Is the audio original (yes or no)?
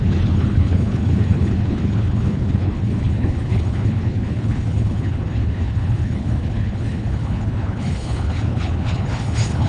no